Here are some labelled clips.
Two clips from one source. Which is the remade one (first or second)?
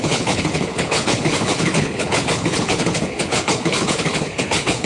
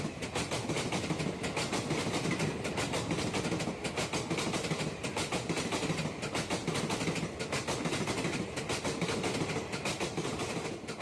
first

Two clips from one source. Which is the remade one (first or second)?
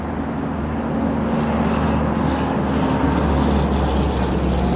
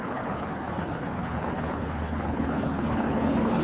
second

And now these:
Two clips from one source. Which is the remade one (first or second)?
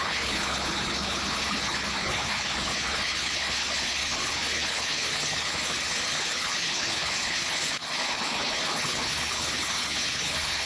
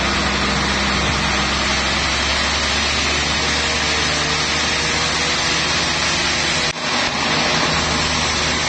first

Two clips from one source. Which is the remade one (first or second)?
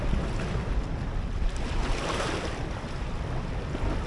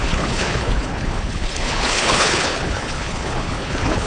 second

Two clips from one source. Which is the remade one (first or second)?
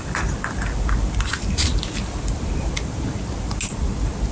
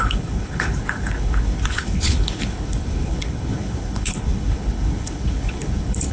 second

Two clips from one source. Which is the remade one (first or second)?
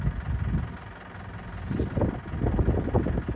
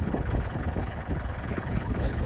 second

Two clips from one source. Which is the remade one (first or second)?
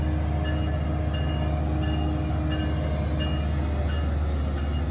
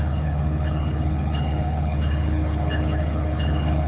second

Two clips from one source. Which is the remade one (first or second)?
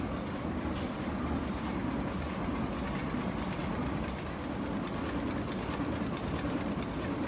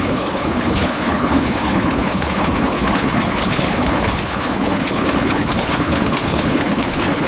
second